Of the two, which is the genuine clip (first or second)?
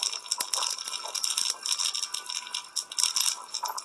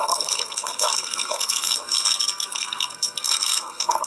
first